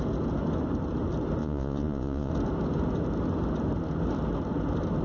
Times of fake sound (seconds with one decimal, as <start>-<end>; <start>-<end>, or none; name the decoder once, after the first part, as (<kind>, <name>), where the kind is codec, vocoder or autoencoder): 1.4-2.3 (vocoder, Vocos)